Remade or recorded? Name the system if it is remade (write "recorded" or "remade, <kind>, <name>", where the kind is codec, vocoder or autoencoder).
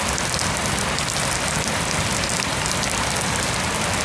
recorded